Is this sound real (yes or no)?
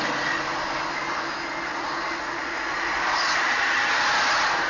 yes